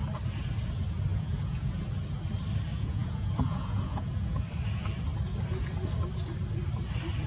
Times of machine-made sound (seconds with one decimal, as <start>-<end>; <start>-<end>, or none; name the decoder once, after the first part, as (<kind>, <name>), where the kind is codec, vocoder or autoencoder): 1.1-1.8 (vocoder, Vocos); 2.7-4.4